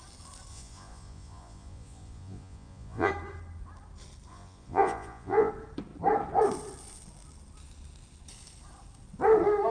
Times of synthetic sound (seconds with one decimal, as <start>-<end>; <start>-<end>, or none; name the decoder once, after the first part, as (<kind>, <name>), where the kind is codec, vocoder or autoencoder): 0.5-3.1 (vocoder, Vocos); 4.3-5.5